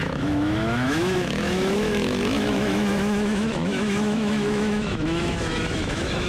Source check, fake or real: fake